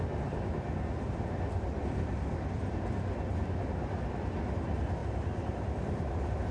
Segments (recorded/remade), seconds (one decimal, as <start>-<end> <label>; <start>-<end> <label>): 0.0-6.5 recorded